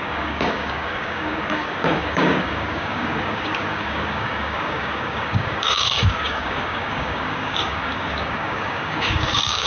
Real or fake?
fake